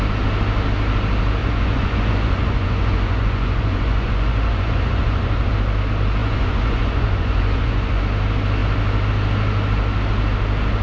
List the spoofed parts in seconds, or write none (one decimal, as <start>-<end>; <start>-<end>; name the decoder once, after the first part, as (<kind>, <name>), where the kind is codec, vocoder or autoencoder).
1.4-5.5 (vocoder, Vocos); 6.2-8.0